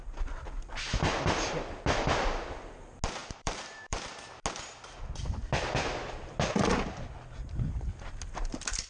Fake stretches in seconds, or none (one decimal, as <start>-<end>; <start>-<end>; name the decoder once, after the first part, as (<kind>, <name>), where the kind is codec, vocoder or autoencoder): 3.2-4.0 (vocoder, BigVGAN v2)